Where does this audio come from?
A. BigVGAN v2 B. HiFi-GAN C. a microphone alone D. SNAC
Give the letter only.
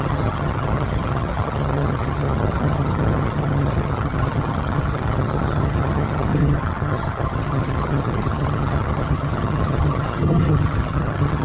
B